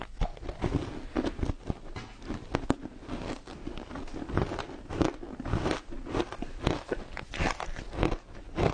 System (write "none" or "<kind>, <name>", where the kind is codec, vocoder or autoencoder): none